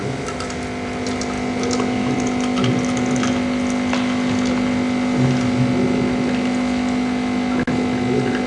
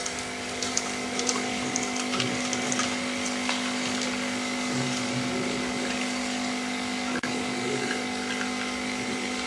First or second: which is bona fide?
first